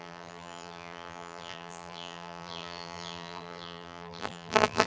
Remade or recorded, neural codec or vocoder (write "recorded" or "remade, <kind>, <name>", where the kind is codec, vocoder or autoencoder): remade, vocoder, BigVGAN v2